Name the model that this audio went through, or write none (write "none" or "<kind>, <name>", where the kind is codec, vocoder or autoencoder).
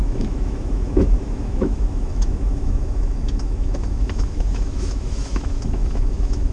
autoencoder, DAC-VAE